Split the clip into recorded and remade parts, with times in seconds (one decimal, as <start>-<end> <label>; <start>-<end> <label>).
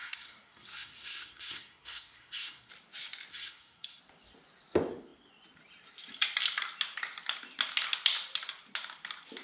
0.0-2.7 remade; 2.7-3.3 recorded; 3.3-4.0 remade; 4.0-9.4 recorded